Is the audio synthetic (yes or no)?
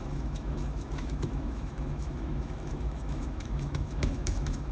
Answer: yes